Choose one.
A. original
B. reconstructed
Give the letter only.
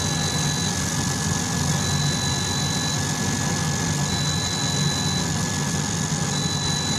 A